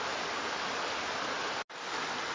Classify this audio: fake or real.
real